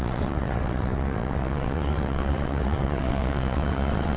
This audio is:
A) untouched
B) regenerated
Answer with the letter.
B